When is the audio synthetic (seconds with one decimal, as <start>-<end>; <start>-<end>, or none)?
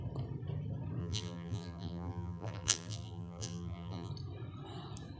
1.0-4.1